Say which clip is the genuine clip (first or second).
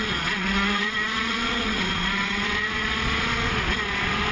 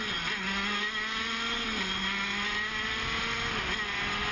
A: second